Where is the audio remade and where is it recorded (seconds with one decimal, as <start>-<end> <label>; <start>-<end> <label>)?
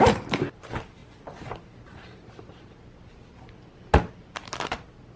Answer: 0.0-5.2 recorded